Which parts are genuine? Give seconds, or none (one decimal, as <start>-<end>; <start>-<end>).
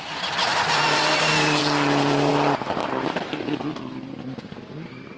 0.0-0.5; 1.2-2.8; 3.4-5.2